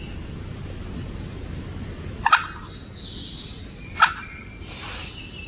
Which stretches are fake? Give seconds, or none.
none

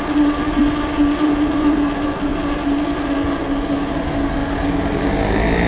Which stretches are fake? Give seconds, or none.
none

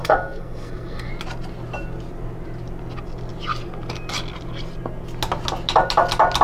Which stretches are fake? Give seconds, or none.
0.0-1.1 (codec, SNAC)

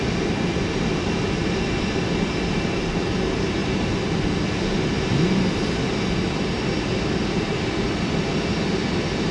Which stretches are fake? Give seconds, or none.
none

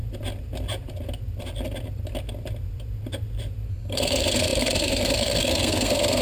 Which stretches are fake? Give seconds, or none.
3.7-6.2 (codec, SNAC)